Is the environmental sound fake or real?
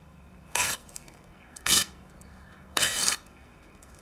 fake